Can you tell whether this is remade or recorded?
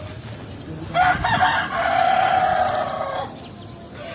recorded